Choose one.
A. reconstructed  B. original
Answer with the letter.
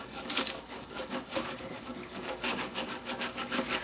A